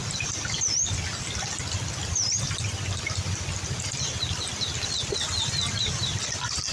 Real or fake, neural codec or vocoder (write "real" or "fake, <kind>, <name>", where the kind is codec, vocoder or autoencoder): real